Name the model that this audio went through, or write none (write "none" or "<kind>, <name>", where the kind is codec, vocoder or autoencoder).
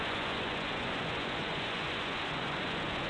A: vocoder, Vocos